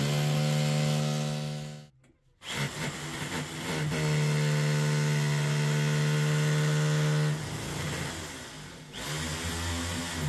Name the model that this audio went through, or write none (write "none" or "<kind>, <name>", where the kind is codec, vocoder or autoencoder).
none